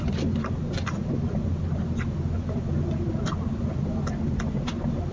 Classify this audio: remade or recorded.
recorded